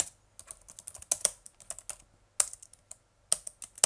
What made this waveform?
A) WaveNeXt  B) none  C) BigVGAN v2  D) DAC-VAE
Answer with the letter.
B